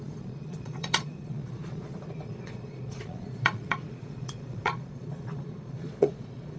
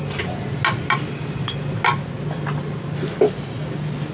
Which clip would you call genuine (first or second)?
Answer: second